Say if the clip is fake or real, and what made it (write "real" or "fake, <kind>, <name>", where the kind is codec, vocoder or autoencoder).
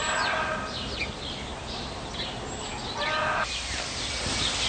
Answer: real